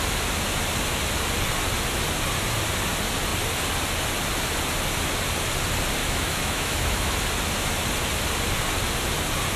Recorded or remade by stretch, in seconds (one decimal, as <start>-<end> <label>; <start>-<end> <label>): 0.0-6.0 recorded; 6.0-7.1 remade; 7.1-9.6 recorded